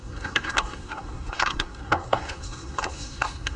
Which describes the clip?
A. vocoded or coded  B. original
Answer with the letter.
A